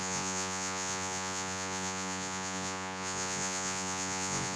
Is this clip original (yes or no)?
no